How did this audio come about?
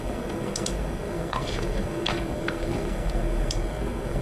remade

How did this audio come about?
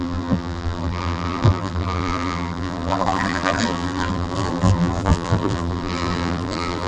remade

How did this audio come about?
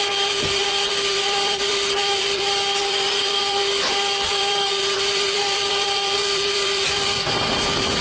remade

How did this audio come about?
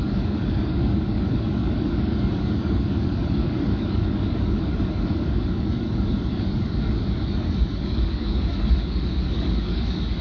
remade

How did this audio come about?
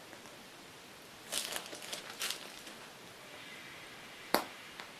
recorded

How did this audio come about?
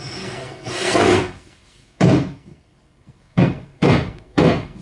remade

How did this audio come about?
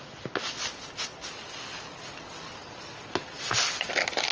recorded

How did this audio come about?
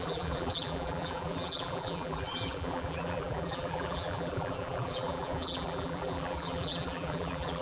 remade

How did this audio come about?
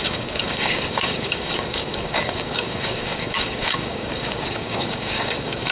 remade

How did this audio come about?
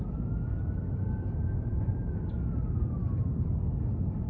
recorded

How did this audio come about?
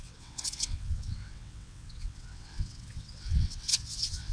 remade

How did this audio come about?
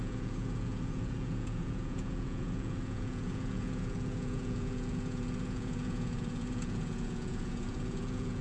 remade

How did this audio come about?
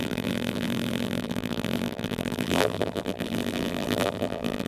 remade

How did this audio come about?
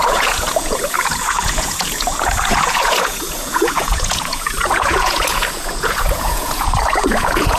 remade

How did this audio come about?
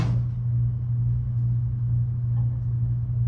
recorded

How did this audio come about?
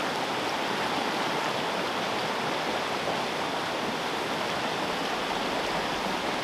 recorded